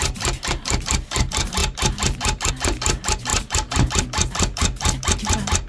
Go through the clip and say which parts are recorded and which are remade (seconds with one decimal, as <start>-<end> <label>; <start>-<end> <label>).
0.0-5.7 recorded